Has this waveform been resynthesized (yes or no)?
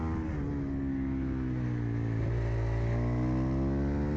no